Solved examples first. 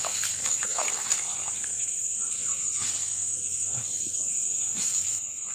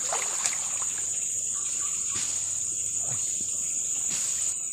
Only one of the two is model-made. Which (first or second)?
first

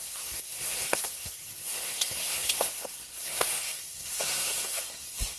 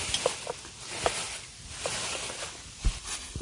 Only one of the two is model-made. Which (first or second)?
first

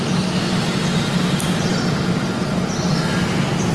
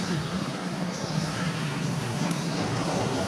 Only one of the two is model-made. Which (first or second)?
second